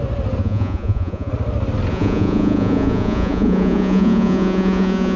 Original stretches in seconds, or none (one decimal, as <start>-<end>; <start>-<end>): 0.0-0.4; 1.3-1.9